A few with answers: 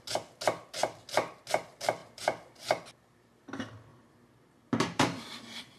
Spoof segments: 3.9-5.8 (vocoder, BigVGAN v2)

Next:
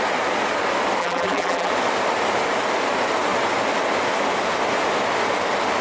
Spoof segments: 1.0-1.7 (vocoder, BigVGAN v2)

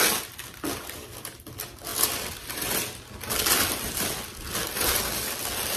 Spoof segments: none

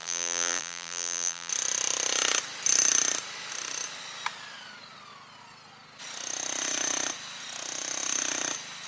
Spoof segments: 0.0-1.5 (vocoder, BigVGAN v2)

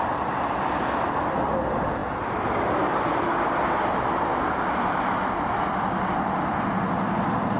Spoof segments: none

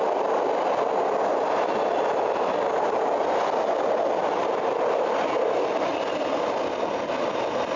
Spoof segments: none